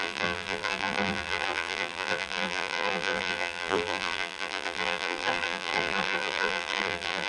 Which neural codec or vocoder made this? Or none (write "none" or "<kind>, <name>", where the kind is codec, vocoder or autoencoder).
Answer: vocoder, BigVGAN v2